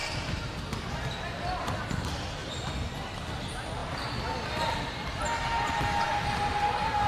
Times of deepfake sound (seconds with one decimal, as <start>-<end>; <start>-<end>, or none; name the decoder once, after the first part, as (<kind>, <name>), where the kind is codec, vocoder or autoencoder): 0.0-0.9 (vocoder, BigVGAN v2)